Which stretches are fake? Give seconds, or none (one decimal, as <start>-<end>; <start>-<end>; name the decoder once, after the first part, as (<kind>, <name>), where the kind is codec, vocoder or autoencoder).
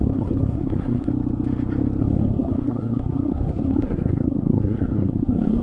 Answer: 0.0-1.1 (codec, SNAC); 2.0-5.6